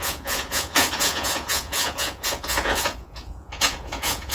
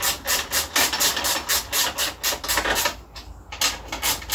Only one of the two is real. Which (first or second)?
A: second